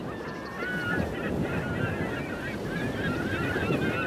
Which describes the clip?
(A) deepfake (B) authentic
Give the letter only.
B